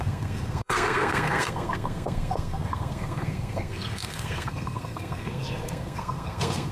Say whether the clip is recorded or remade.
remade